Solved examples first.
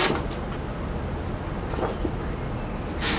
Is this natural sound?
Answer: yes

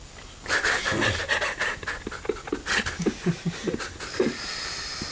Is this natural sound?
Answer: yes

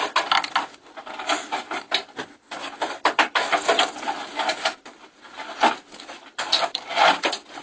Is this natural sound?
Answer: yes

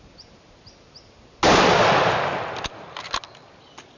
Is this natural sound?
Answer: yes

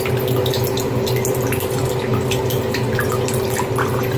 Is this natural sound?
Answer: yes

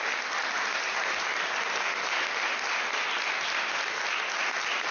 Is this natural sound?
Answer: yes